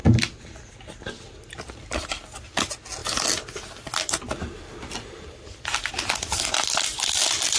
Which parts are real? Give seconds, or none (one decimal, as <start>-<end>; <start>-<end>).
0.0-7.6